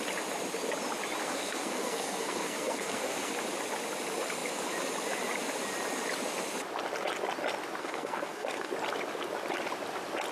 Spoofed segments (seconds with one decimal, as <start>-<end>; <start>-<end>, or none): 1.2-3.3; 7.8-8.7